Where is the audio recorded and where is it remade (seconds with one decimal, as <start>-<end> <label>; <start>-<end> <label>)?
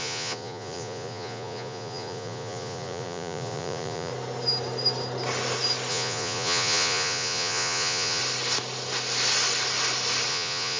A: 0.0-4.1 remade; 4.1-5.9 recorded; 5.9-8.2 remade; 8.2-10.3 recorded; 10.3-10.8 remade